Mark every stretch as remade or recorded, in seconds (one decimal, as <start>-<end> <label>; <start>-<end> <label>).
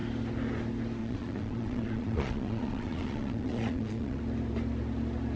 0.0-1.0 recorded; 1.0-4.2 remade; 4.2-5.4 recorded